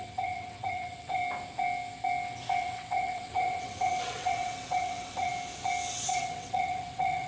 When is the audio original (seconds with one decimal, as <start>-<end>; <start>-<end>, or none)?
1.2-2.6; 5.3-5.9